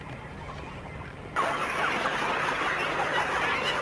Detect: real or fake real